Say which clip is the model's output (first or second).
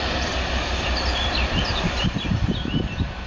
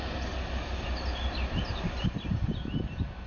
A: first